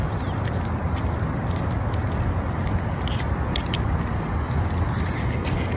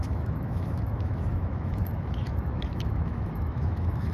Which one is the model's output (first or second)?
second